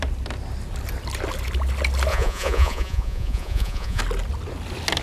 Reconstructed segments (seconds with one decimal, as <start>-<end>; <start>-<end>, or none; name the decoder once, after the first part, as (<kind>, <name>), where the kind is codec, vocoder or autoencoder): 2.1-4.0 (vocoder, Vocos)